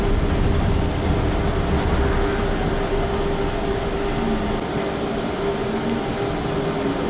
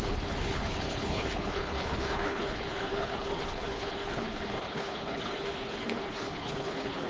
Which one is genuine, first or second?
first